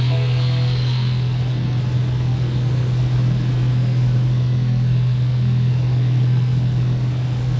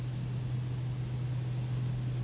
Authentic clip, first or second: second